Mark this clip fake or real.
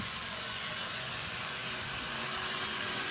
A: fake